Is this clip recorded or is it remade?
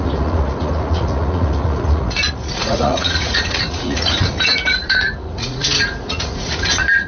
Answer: remade